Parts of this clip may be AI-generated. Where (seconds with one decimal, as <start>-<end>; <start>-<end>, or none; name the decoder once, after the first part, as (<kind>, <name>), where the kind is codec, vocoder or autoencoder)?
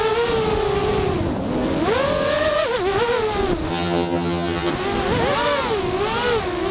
3.7-4.7 (vocoder, HiFi-GAN)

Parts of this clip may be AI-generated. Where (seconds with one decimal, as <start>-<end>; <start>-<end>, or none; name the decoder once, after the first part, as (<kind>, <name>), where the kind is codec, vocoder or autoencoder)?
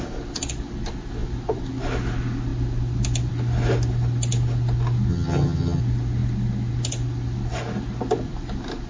5.1-5.8 (vocoder, HiFi-GAN)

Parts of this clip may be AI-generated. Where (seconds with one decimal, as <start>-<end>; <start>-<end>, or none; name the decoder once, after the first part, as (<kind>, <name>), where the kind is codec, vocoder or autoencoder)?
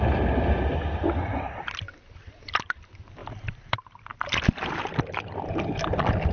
none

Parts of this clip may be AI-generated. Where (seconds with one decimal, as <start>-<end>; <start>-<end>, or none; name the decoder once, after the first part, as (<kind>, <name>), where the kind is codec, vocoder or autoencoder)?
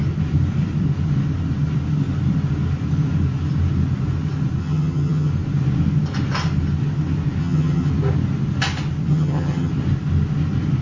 4.6-5.3 (vocoder, HiFi-GAN); 7.4-7.9; 9.1-9.7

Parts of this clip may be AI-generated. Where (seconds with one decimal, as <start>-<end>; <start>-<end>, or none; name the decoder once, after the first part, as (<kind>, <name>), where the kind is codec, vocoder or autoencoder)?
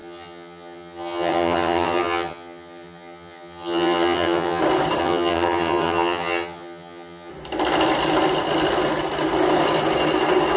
0.0-4.6 (vocoder, HiFi-GAN); 5.0-7.3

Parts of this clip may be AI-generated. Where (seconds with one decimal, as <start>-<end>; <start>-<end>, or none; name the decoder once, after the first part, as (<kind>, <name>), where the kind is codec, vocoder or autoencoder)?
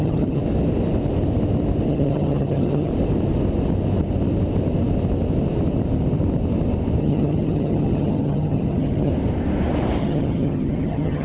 0.0-0.4 (vocoder, HiFi-GAN); 1.9-2.9; 7.0-9.1; 10.0-11.2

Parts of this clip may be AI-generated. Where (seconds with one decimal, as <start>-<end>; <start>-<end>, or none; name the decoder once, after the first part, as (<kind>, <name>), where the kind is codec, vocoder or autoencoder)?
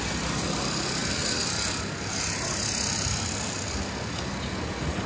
none